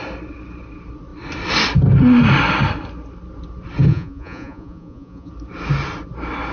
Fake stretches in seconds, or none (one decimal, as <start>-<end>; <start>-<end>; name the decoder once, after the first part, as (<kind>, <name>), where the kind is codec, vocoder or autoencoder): 3.9-5.3 (vocoder, Vocos)